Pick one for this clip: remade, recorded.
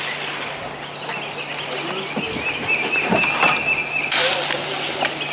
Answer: recorded